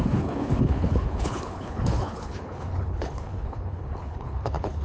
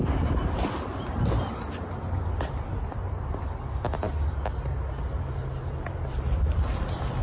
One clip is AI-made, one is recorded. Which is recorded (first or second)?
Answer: second